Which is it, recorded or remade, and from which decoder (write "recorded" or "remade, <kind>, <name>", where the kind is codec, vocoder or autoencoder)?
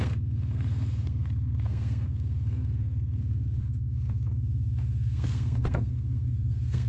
remade, codec, SNAC